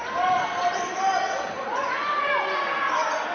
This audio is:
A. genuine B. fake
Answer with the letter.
A